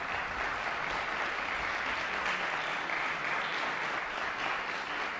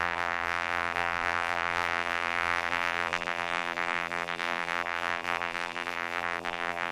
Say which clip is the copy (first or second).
second